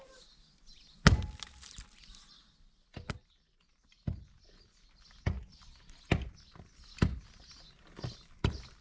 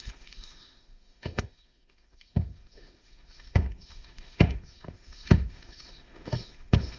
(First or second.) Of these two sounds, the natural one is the first